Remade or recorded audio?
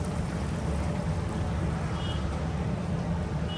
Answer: recorded